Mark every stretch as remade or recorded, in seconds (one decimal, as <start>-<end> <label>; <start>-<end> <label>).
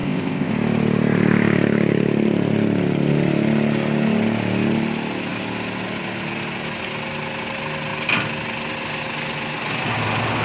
0.0-0.5 remade; 0.5-10.4 recorded